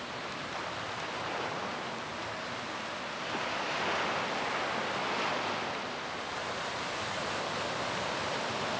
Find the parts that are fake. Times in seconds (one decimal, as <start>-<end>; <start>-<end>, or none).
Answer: none